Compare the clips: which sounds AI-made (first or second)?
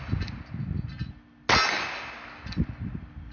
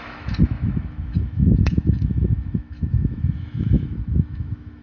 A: second